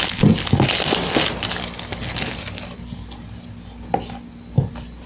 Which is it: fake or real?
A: real